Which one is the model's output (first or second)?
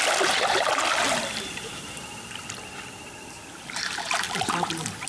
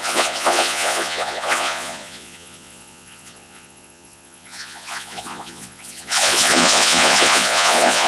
second